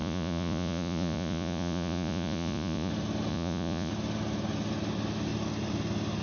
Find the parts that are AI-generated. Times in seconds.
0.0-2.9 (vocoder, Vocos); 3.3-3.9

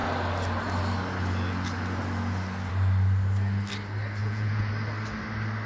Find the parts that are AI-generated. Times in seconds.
4.2-4.7 (vocoder, Vocos)

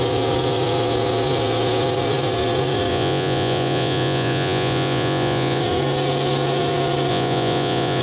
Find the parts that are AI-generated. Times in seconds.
2.9-5.6 (vocoder, Vocos); 7.1-8.0

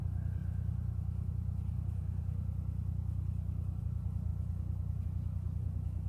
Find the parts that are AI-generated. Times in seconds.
none

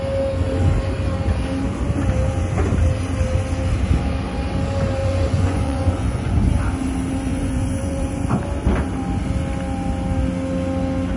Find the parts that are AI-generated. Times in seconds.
5.0-6.5 (vocoder, Vocos); 7.3-8.4